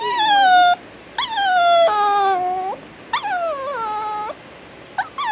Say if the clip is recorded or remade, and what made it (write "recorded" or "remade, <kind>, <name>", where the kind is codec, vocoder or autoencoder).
recorded